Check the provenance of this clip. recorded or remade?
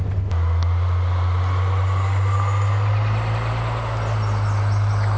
recorded